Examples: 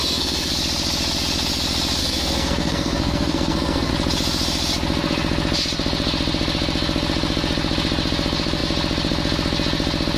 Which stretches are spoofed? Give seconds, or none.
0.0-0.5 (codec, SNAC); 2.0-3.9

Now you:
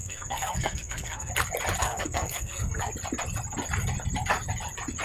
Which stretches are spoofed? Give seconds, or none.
0.0-1.3 (codec, SNAC); 1.8-2.9